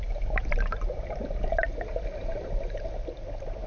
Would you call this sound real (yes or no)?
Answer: yes